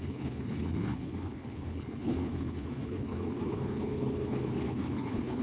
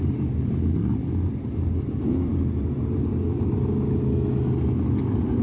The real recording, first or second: second